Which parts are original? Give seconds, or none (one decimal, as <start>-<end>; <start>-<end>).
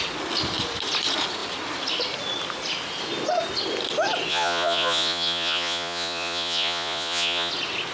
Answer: 0.0-4.3; 7.5-7.9